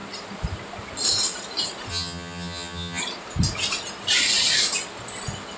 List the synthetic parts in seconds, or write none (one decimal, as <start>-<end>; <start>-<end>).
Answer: 1.9-3.0